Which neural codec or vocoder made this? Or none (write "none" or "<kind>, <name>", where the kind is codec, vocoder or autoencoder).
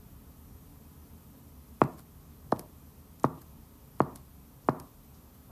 none